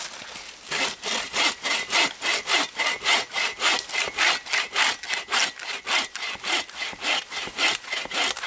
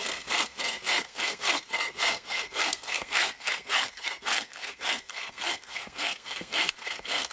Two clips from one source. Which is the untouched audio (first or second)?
first